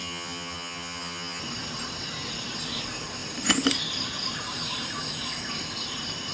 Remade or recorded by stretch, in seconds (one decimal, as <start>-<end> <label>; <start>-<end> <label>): 0.0-1.4 remade; 1.4-6.3 recorded